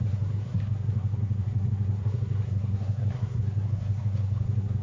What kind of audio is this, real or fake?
fake